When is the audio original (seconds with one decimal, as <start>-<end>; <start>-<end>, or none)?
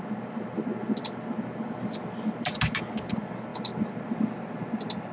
0.0-5.1